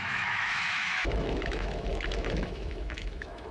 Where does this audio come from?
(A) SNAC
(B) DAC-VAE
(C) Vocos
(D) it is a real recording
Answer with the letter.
B